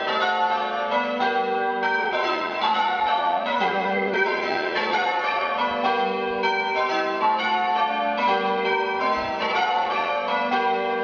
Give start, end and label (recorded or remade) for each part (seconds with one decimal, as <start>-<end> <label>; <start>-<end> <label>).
0.0-2.0 recorded; 2.0-5.6 remade; 5.6-9.5 recorded; 9.5-10.1 remade; 10.1-11.0 recorded

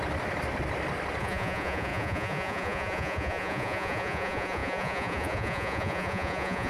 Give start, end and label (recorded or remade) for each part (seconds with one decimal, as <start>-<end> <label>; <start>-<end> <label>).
0.0-1.2 recorded; 1.2-6.7 remade

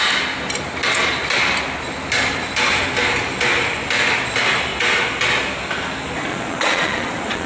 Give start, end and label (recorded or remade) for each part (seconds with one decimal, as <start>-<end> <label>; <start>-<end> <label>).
0.0-6.3 recorded; 6.3-7.5 remade